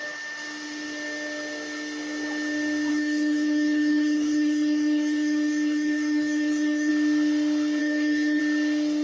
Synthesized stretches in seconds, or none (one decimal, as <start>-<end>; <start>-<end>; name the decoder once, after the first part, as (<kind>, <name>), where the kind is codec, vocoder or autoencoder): 2.9-6.9 (codec, DAC); 7.8-8.4